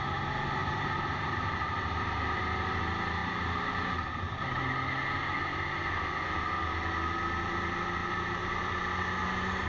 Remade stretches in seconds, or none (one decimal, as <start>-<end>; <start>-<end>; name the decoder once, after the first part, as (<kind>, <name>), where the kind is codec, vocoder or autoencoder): 0.6-1.9 (vocoder, BigVGAN v2); 3.2-4.5; 8.0-8.5